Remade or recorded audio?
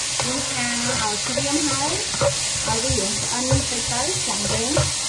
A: recorded